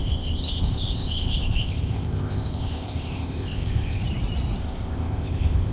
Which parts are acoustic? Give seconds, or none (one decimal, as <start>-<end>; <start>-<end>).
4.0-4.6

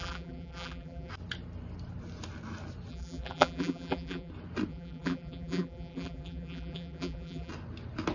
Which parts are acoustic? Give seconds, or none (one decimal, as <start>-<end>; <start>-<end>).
1.1-2.9; 4.3-4.7; 7.5-8.1

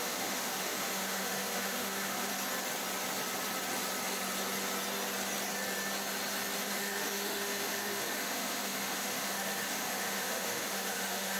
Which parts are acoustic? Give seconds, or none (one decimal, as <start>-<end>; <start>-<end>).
2.3-6.6

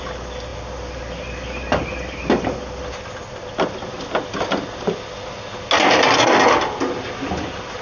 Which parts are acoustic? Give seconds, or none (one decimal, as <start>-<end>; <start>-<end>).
0.0-7.8

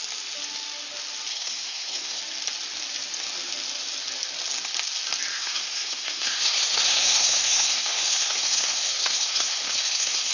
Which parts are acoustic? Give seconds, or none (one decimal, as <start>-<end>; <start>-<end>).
0.0-1.3; 2.2-5.3